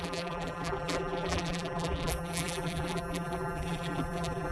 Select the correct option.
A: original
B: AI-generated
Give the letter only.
B